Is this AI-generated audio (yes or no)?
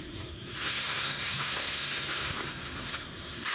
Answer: yes